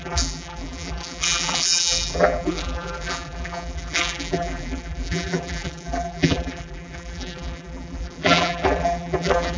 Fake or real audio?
fake